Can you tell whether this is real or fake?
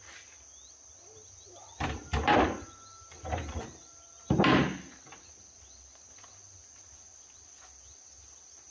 real